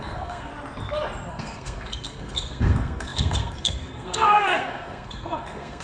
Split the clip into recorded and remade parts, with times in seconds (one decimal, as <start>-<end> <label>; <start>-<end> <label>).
0.0-0.5 remade; 0.5-1.3 recorded; 1.3-5.8 remade